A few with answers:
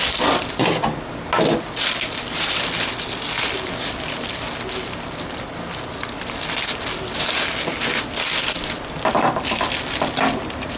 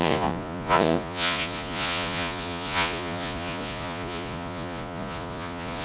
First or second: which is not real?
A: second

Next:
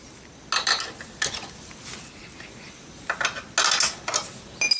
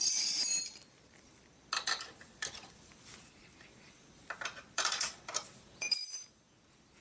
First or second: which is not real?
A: second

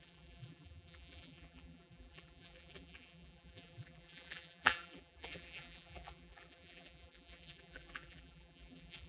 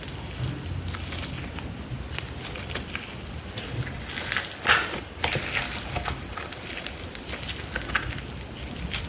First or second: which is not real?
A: first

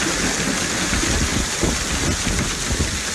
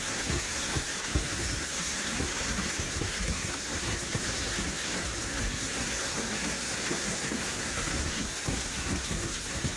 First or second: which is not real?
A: second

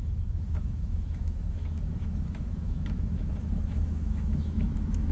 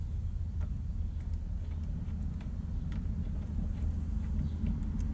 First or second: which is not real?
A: first